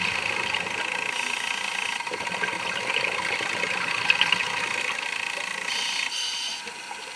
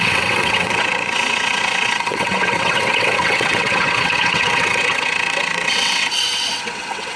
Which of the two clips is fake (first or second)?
second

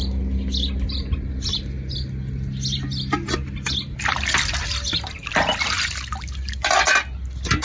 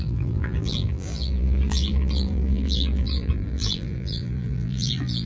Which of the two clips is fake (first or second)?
second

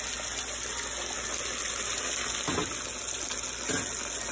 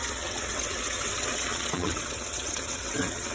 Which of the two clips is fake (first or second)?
second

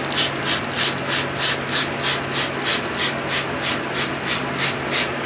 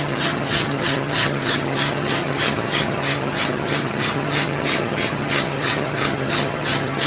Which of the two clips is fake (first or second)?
second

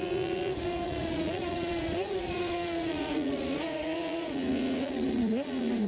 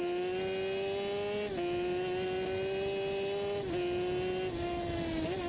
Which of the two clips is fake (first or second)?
first